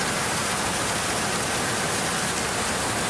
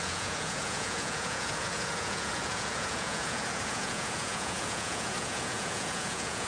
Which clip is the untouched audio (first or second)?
first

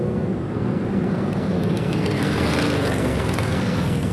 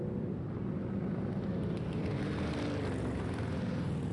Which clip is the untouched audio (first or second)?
second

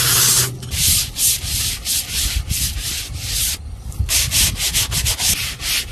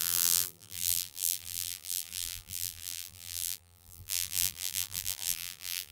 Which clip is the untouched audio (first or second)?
first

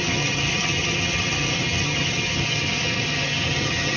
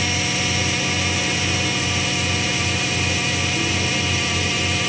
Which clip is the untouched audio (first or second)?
second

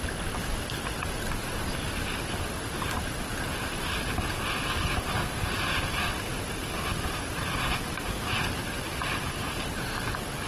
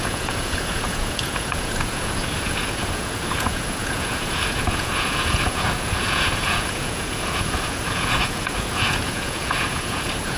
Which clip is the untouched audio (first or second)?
first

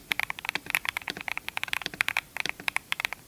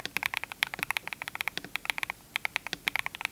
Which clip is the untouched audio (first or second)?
second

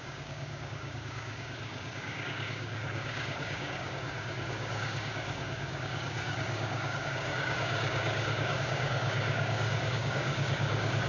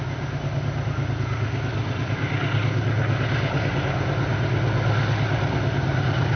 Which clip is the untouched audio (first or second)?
second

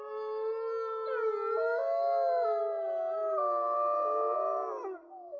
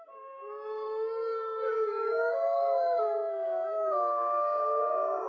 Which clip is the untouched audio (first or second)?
first